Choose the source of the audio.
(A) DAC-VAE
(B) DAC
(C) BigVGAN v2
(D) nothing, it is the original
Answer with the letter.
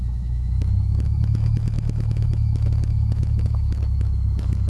A